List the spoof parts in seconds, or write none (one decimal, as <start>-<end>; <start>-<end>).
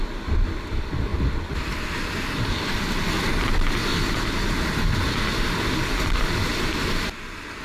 none